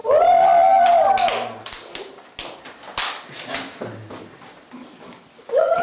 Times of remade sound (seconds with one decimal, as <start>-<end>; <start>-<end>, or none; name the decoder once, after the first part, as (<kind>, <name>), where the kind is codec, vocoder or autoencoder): 4.8-5.8 (codec, DAC)